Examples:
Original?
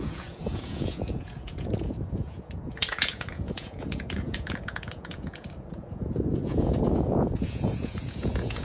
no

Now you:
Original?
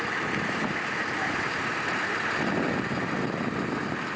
yes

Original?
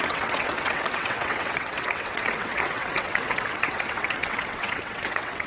no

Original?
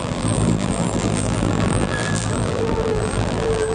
no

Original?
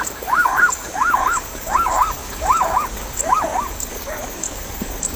no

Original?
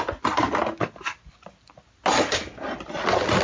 yes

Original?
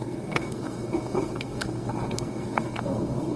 no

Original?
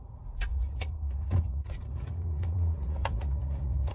no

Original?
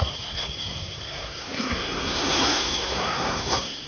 no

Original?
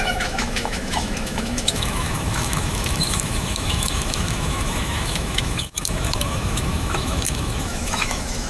no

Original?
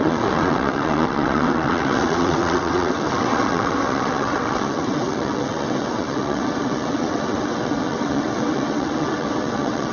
no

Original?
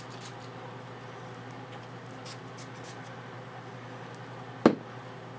yes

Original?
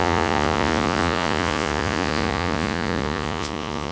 no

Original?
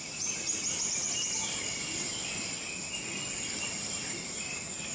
yes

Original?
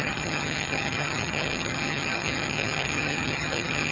no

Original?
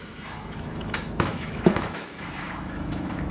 no